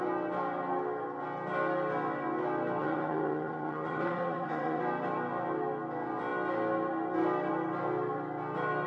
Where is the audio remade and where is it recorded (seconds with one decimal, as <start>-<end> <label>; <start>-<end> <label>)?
0.0-2.8 recorded; 2.8-4.8 remade; 4.8-8.9 recorded

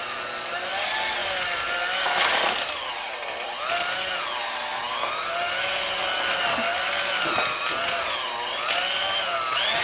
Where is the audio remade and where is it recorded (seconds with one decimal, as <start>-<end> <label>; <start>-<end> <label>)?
0.0-9.8 recorded

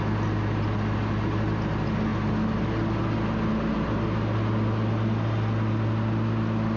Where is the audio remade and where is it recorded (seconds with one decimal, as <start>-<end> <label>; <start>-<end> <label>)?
0.0-6.8 recorded

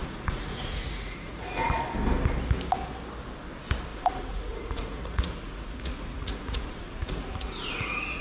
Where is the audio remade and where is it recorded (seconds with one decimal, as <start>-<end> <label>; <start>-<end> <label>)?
0.0-1.7 remade; 1.7-3.9 recorded; 3.9-8.2 remade

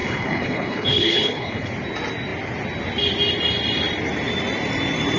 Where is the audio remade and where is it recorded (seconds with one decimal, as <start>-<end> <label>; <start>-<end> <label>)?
0.0-1.7 remade; 1.7-5.2 recorded

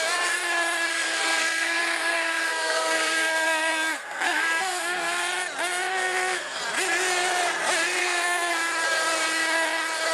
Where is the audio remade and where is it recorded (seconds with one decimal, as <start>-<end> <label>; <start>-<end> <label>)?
0.0-0.9 recorded; 0.9-5.2 remade; 5.2-5.9 recorded; 5.9-6.6 remade; 6.6-8.0 recorded; 8.0-8.5 remade; 8.5-10.1 recorded

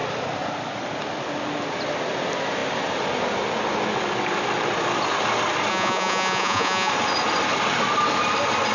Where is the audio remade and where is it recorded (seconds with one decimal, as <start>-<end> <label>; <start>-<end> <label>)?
0.0-5.7 recorded; 5.7-6.9 remade; 6.9-8.7 recorded